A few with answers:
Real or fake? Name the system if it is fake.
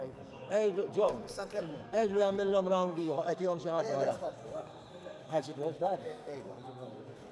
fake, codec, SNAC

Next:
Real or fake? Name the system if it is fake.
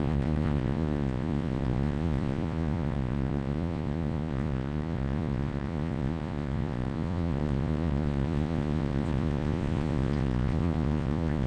fake, vocoder, Vocos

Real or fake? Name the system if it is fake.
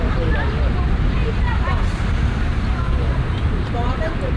fake, vocoder, BigVGAN v2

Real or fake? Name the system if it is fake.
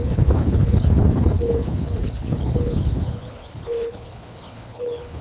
fake, codec, HILCodec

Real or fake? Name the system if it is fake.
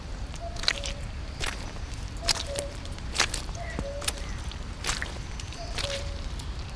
fake, vocoder, BigVGAN v2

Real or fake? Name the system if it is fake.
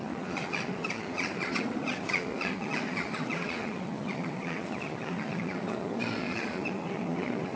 fake, vocoder, Vocos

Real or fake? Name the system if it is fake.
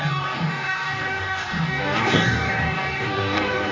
fake, codec, DAC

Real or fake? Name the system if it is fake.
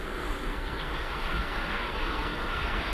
fake, codec, SNAC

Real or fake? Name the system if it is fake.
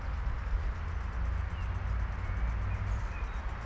real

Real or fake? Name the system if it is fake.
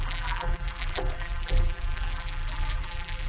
fake, vocoder, BigVGAN v2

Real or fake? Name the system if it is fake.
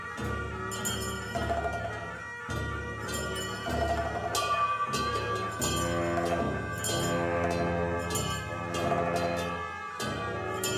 real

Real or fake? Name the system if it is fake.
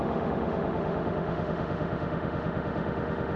fake, autoencoder, DAC-VAE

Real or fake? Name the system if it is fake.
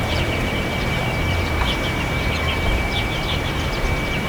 fake, vocoder, BigVGAN v2